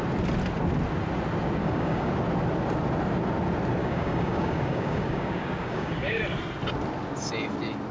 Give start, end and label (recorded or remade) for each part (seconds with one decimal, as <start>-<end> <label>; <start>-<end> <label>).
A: 0.0-1.6 recorded; 1.6-2.1 remade; 2.1-3.8 recorded; 3.8-6.2 remade; 6.2-7.9 recorded